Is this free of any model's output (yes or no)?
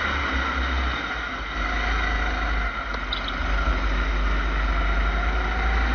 yes